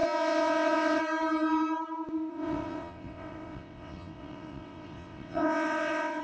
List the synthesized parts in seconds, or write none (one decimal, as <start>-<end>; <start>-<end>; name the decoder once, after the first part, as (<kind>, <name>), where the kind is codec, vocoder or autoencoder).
0.0-1.0 (vocoder, WaveNeXt); 2.3-6.2